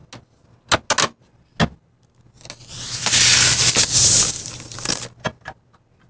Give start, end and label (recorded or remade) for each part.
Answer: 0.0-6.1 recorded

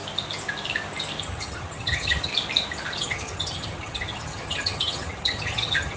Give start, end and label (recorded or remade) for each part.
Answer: 0.0-1.2 recorded; 1.2-2.3 remade; 2.3-3.0 recorded; 3.0-6.0 remade

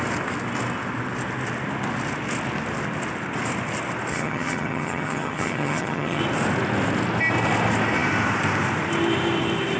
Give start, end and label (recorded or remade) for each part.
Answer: 0.0-4.1 recorded; 4.1-6.2 remade; 6.2-9.8 recorded

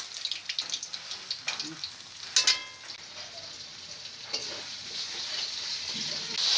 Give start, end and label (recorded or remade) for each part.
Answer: 0.0-6.6 recorded

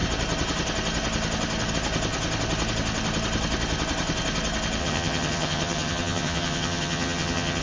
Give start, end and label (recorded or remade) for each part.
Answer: 0.0-4.8 recorded; 4.8-7.6 remade